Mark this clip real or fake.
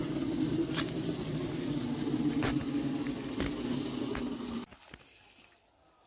real